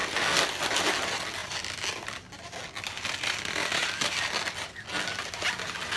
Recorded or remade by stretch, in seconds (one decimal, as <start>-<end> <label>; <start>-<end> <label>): 0.0-6.0 recorded